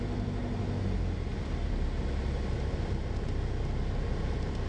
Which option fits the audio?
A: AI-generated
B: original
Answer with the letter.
B